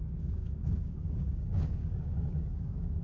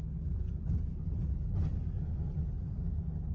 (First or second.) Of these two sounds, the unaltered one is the second